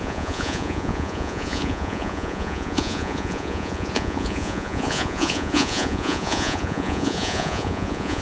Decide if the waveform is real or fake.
fake